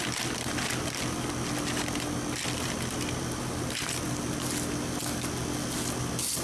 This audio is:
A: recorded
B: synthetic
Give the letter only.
A